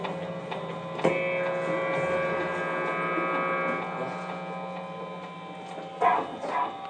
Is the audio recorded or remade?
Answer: recorded